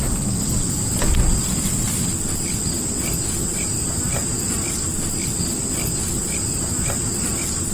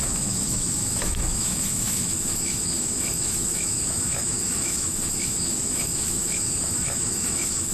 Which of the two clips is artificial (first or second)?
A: second